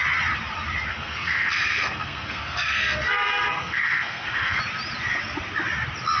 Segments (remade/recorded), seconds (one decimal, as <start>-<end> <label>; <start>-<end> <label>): 0.0-0.9 recorded; 0.9-4.6 remade; 4.6-6.2 recorded